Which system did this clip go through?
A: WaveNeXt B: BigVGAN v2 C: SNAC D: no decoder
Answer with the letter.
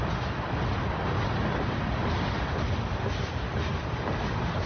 D